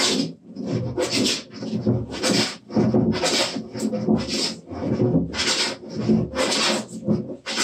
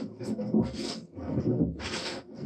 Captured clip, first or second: first